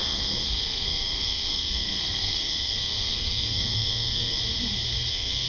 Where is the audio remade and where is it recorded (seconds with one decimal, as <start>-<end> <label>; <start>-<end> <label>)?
0.0-4.4 remade; 4.4-5.1 recorded; 5.1-5.5 remade